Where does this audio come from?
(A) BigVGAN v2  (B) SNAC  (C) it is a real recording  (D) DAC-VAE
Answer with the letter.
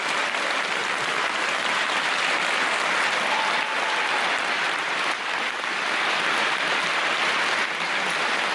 C